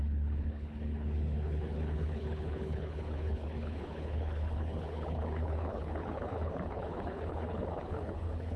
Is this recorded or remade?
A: remade